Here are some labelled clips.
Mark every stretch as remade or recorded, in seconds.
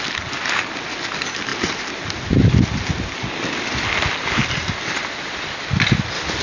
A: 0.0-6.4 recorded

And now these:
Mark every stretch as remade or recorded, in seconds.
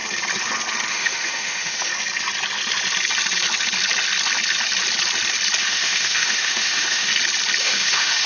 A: 0.0-0.9 recorded; 0.9-1.9 remade; 1.9-5.6 recorded; 5.6-7.1 remade; 7.1-7.6 recorded; 7.6-8.3 remade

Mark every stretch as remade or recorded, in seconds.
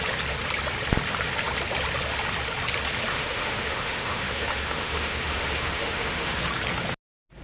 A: 0.0-3.1 recorded; 3.1-6.4 remade; 6.4-7.4 recorded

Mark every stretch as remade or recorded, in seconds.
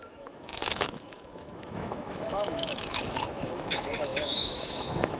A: 0.0-5.2 remade